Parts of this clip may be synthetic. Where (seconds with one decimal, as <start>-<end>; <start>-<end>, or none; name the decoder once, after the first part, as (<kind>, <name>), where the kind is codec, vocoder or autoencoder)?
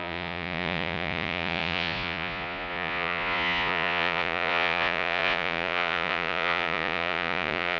0.0-7.8 (vocoder, Vocos)